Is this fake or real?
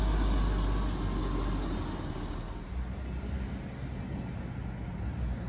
real